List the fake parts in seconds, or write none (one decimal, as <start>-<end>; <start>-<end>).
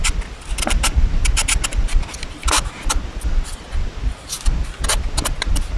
none